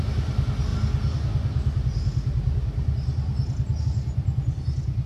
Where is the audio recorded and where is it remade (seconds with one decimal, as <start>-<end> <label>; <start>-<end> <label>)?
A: 0.0-5.1 recorded